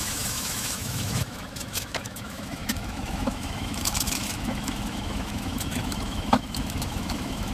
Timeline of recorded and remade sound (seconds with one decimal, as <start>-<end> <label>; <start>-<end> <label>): 0.0-7.5 remade